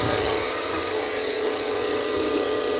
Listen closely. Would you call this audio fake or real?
fake